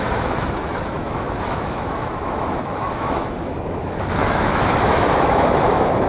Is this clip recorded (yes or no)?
no